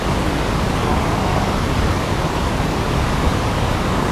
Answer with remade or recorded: remade